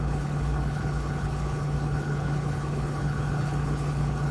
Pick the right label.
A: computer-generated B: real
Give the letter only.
A